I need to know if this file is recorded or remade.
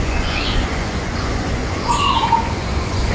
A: remade